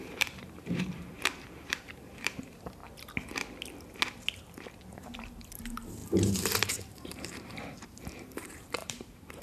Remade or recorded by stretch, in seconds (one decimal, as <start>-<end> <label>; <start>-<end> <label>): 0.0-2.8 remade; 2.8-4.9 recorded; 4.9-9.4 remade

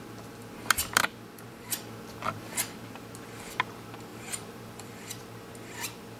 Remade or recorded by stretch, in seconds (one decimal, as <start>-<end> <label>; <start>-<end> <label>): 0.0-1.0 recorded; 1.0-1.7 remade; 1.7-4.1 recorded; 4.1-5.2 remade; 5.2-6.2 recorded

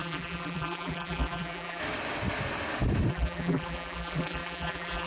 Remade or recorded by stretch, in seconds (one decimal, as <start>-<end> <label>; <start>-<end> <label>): 0.0-1.8 remade; 1.8-3.1 recorded; 3.1-5.1 remade

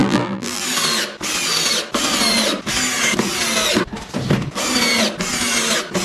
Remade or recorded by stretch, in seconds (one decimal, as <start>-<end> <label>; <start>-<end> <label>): 0.0-0.6 remade; 0.6-6.0 recorded

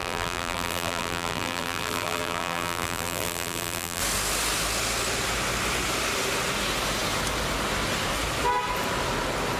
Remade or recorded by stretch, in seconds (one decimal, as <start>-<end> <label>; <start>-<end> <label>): 0.0-4.0 remade; 4.0-9.6 recorded

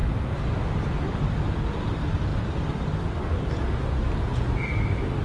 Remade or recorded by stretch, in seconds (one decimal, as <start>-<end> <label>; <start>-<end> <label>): 0.0-2.3 remade; 2.3-5.2 recorded